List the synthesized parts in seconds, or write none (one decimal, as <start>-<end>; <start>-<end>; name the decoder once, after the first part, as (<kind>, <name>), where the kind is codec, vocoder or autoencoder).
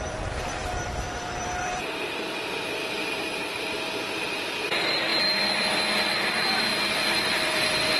0.0-3.0 (vocoder, BigVGAN v2); 3.5-5.1; 5.6-6.7; 7.2-8.0